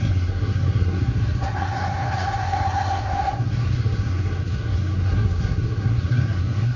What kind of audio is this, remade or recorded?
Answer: remade